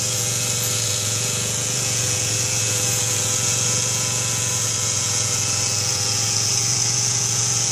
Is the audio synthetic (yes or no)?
yes